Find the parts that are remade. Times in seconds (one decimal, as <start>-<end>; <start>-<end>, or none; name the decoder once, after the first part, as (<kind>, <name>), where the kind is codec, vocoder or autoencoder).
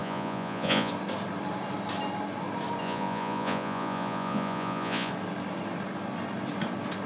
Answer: 0.0-0.9 (vocoder, Vocos); 2.8-5.1